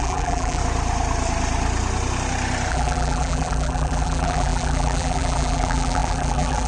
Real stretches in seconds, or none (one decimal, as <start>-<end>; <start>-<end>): 0.6-2.7